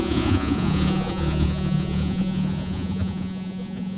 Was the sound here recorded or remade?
remade